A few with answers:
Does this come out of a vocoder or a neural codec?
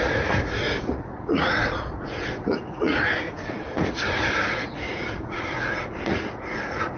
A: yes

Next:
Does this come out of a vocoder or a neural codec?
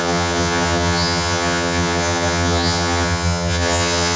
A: yes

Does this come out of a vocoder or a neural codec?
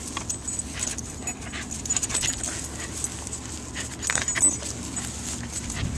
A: no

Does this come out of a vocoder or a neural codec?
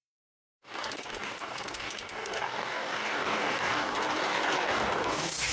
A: yes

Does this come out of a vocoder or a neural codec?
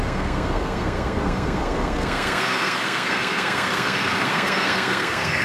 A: yes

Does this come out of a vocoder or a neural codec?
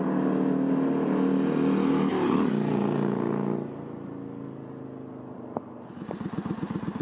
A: no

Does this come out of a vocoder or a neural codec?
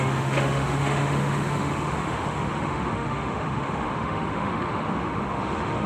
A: yes